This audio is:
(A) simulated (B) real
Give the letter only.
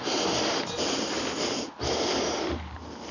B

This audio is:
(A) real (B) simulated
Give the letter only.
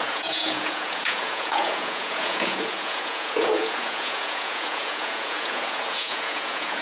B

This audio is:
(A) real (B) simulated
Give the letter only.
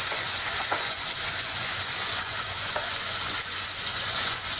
B